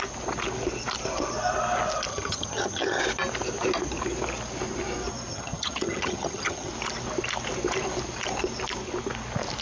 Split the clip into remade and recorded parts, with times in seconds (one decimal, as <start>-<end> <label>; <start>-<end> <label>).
0.0-2.1 recorded; 2.1-3.0 remade; 3.0-5.3 recorded; 5.3-6.7 remade; 6.7-9.6 recorded